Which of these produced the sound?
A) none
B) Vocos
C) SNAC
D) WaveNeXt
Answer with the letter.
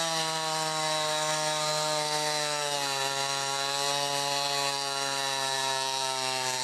C